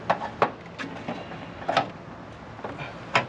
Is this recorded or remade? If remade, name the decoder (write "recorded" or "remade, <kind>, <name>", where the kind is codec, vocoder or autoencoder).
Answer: recorded